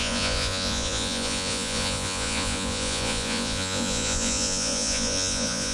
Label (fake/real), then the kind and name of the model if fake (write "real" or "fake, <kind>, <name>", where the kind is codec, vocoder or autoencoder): fake, vocoder, Vocos